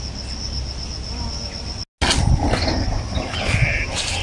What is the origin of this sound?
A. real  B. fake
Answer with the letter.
A